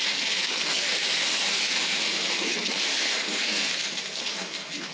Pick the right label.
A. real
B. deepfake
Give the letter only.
B